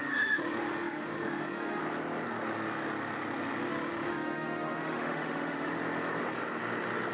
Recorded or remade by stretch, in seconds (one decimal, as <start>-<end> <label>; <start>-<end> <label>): 0.0-1.8 remade; 1.8-3.7 recorded; 3.7-5.7 remade; 5.7-7.1 recorded